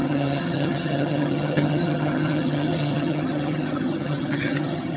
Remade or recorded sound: remade